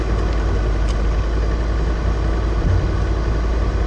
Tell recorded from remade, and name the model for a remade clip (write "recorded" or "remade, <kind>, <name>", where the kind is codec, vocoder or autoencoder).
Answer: recorded